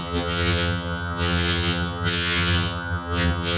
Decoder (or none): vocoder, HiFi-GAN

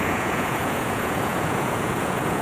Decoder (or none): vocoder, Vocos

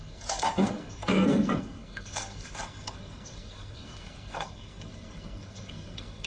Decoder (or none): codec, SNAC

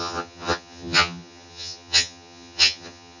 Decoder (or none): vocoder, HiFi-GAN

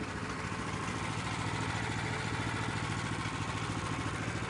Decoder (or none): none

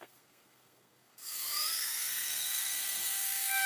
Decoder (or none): codec, SNAC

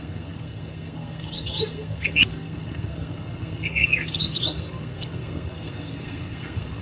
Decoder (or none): codec, SNAC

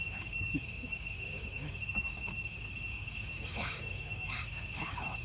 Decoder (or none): codec, DAC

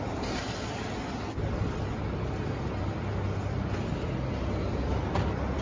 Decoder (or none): none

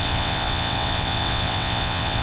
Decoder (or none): vocoder, WaveNeXt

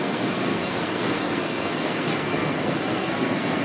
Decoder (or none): codec, SNAC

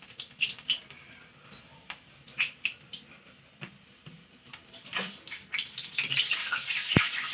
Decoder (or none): vocoder, BigVGAN v2